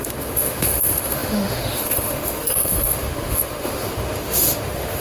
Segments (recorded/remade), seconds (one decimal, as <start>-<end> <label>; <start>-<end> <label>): 0.0-5.0 remade